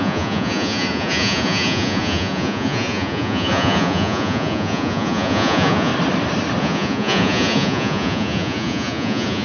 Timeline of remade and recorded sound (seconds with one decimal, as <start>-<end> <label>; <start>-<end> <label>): 0.0-5.9 remade; 5.9-6.6 recorded; 6.6-9.4 remade